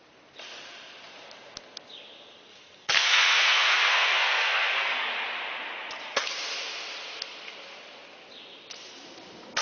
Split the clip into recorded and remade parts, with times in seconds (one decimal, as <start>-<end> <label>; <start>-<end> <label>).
0.0-2.5 recorded; 2.5-5.1 remade; 5.1-9.6 recorded